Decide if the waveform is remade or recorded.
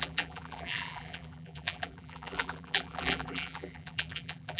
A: remade